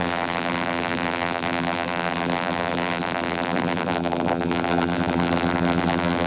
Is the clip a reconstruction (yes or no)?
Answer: yes